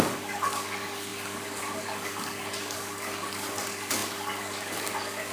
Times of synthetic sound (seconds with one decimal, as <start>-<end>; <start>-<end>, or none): 0.0-5.3